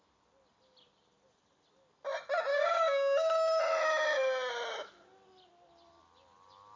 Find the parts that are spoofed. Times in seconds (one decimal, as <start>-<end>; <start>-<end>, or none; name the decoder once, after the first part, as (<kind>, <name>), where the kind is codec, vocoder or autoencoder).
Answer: 2.5-3.6 (codec, DAC)